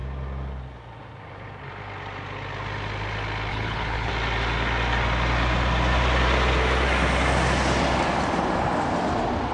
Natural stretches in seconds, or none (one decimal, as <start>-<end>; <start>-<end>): 0.0-3.5; 4.1-9.5